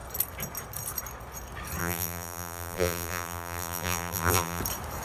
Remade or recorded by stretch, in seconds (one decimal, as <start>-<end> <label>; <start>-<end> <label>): 0.0-1.8 recorded; 1.8-4.6 remade; 4.6-5.0 recorded